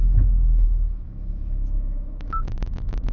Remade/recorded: remade